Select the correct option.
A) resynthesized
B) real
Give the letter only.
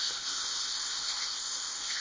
A